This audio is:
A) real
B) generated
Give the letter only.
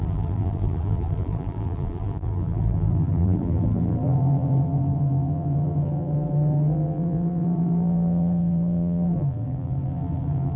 B